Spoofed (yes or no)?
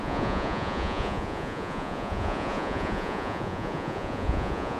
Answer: yes